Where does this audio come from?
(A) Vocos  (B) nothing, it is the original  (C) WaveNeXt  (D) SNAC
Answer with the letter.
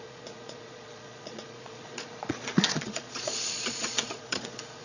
A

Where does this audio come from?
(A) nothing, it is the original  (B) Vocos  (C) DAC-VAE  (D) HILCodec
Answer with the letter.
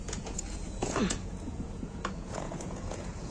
B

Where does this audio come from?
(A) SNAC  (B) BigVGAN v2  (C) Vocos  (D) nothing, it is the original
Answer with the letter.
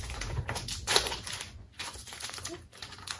C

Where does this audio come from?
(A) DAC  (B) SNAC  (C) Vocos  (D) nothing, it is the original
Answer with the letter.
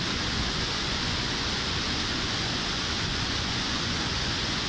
C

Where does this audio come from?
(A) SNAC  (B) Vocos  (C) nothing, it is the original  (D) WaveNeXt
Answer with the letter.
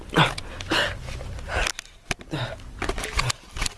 C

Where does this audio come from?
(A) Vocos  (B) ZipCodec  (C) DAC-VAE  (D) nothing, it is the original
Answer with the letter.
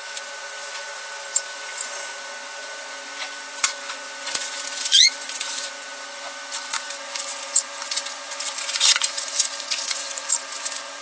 A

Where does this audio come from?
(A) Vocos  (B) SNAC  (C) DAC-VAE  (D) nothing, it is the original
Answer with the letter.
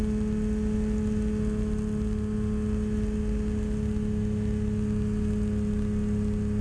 D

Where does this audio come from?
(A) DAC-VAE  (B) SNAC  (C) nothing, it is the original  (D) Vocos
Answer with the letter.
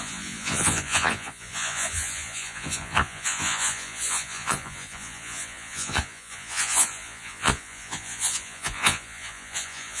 D